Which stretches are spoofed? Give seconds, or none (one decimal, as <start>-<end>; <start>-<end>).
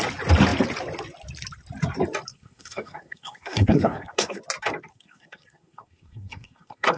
2.3-4.4; 4.9-7.0